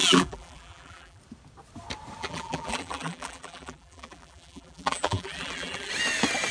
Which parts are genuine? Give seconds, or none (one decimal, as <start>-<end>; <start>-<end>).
1.2-2.2; 5.9-6.5

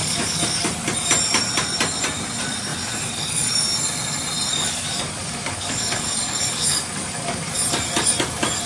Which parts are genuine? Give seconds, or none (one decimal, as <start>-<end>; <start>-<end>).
0.6-4.5; 7.5-8.7